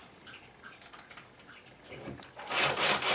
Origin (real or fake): real